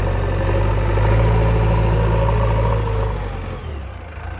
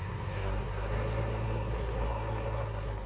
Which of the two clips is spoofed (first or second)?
second